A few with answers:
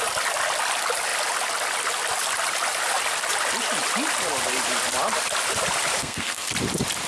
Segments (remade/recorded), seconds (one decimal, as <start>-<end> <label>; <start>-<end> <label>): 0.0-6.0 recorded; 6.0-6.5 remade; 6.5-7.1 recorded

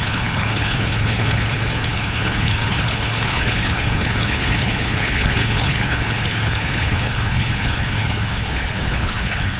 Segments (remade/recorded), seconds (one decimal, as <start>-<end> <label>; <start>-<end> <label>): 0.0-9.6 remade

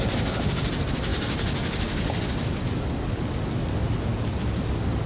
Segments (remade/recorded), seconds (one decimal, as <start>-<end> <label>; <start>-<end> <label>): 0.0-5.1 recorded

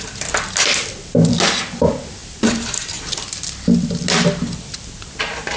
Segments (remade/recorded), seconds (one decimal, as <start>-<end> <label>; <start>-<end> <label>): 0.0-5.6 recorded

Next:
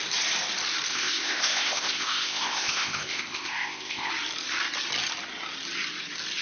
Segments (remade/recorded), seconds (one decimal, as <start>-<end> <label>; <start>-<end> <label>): 0.0-0.9 recorded; 0.9-4.1 remade; 4.1-6.4 recorded

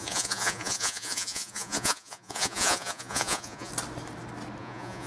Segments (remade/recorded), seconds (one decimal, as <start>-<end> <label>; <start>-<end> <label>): 0.0-3.7 remade; 3.7-4.6 recorded; 4.6-5.1 remade

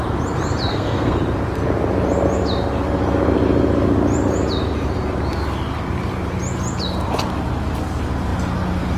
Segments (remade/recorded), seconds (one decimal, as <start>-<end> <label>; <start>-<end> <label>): 0.0-0.7 recorded; 0.7-1.2 remade; 1.2-9.0 recorded